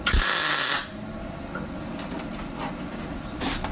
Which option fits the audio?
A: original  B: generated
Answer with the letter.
B